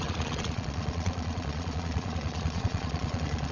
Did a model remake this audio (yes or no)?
yes